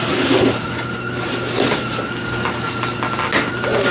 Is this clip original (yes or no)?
yes